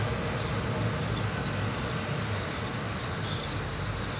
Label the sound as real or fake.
real